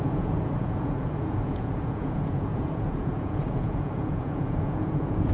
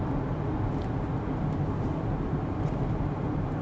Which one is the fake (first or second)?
first